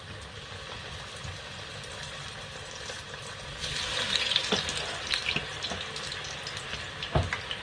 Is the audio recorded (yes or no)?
yes